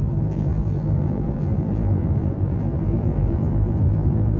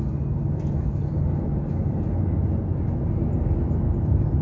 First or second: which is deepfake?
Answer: first